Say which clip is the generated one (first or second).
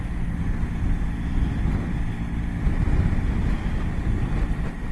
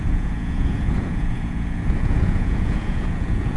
second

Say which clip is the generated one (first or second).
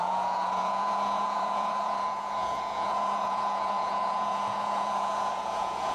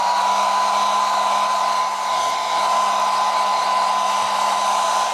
first